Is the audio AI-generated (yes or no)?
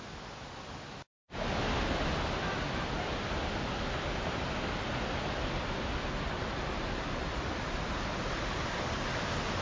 no